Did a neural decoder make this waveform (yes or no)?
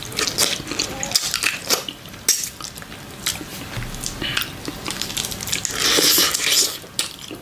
no